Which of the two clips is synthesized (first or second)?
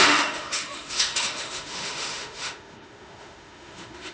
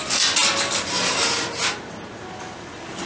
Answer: first